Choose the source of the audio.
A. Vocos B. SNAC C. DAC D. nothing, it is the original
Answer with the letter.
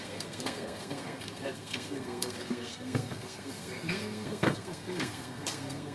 B